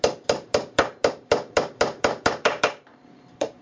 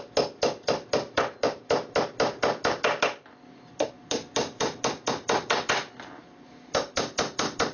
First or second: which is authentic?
second